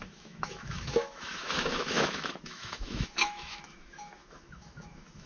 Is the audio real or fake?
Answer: fake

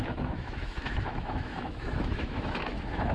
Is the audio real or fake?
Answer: fake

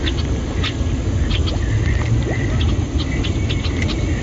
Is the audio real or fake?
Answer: real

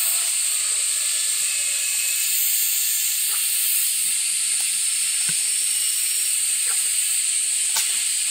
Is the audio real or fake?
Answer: real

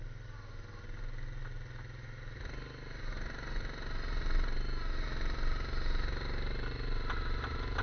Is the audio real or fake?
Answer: real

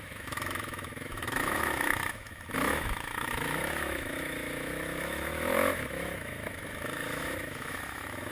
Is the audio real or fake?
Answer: fake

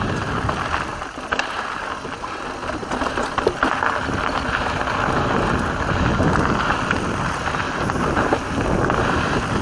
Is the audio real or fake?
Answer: real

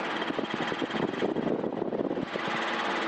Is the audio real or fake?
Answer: real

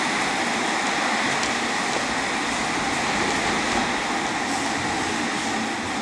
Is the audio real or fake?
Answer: real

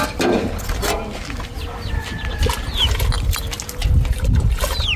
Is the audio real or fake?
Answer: real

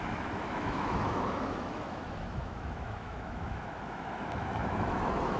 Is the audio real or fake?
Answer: fake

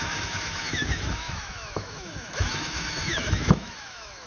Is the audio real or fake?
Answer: fake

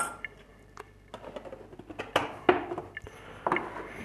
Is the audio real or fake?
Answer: real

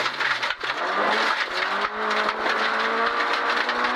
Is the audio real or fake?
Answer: real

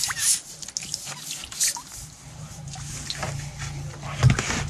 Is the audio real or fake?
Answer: real